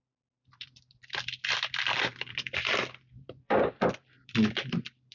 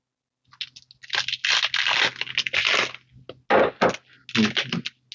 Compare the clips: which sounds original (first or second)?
second